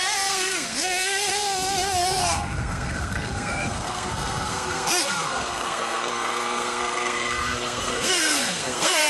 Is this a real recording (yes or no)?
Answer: no